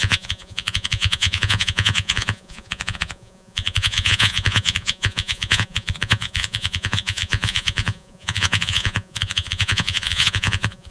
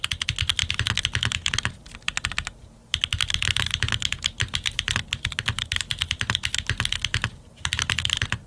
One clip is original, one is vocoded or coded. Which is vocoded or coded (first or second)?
first